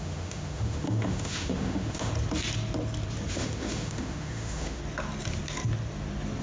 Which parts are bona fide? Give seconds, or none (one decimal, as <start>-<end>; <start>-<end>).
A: 2.1-3.3; 4.8-6.4